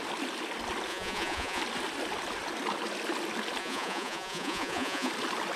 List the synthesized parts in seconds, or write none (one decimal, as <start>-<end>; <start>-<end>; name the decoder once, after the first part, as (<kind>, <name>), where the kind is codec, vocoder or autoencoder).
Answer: 0.9-1.6 (vocoder, Vocos); 3.6-5.1